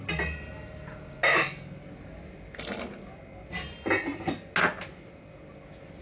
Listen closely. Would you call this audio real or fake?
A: real